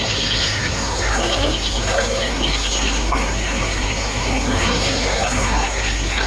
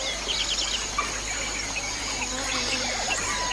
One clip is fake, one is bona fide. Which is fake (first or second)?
first